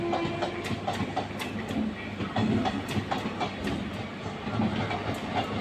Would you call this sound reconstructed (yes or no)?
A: no